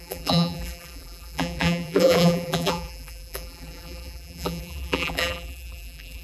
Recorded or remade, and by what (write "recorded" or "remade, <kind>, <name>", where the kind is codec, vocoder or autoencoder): remade, vocoder, BigVGAN v2